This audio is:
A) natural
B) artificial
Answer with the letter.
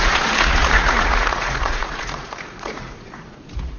B